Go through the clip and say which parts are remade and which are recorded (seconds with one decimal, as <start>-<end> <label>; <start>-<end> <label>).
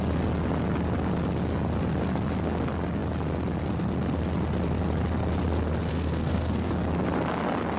0.0-5.9 recorded; 5.9-6.7 remade; 6.7-7.8 recorded